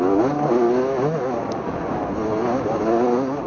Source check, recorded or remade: recorded